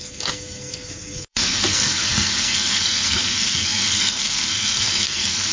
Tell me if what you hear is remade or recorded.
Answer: remade